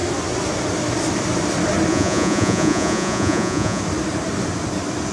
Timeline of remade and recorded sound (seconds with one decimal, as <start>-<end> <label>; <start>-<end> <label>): 0.0-1.9 recorded; 1.9-3.8 remade; 3.8-5.1 recorded